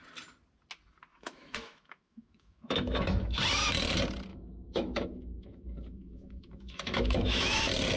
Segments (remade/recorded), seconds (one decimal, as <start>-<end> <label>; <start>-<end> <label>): 0.0-1.1 recorded; 1.1-3.4 remade; 3.4-4.3 recorded; 4.3-7.6 remade; 7.6-8.0 recorded